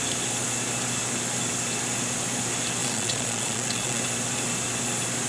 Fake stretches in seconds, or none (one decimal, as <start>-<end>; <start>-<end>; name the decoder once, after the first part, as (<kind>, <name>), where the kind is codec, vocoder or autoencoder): 2.8-4.0 (vocoder, Vocos)